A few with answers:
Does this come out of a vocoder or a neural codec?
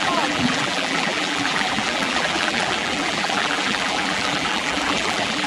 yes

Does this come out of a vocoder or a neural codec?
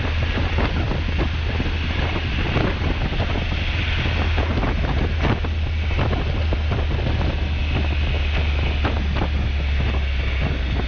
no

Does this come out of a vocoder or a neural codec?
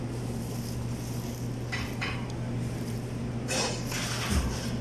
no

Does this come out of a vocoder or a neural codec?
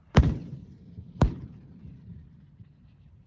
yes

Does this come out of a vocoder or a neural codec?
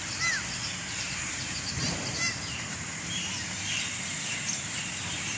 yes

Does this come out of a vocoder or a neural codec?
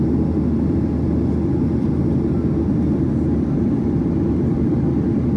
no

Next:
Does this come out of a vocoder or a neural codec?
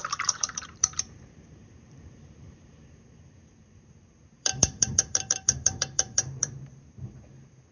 yes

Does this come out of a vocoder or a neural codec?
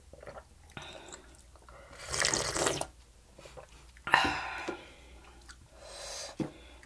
no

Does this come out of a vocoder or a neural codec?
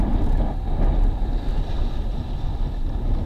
no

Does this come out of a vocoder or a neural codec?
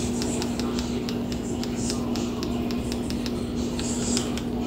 no